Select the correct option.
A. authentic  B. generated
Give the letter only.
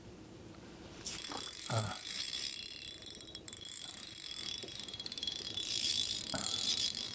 B